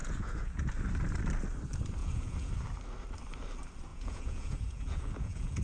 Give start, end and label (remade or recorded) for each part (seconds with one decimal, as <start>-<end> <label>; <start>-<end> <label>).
0.0-0.7 remade; 0.7-2.0 recorded; 2.0-2.5 remade; 2.5-3.9 recorded; 3.9-5.6 remade